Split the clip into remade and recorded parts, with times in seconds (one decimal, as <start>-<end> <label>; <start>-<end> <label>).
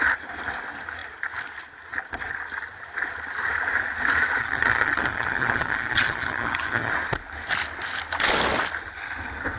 0.0-4.4 recorded; 4.4-6.9 remade; 6.9-9.6 recorded